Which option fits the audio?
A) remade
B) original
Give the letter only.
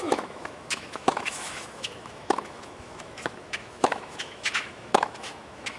A